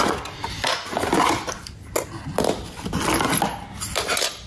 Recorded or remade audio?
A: recorded